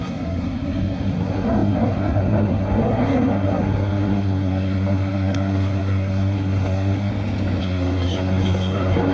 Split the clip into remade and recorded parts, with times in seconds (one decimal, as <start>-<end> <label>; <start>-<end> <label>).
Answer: 0.0-7.1 remade; 7.1-7.6 recorded; 7.6-9.1 remade